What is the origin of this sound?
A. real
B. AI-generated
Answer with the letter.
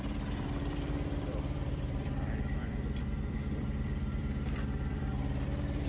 B